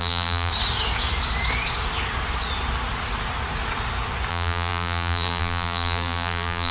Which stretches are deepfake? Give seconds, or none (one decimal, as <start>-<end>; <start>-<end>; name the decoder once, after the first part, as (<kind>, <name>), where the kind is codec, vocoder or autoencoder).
0.0-0.5 (vocoder, BigVGAN v2); 4.3-6.7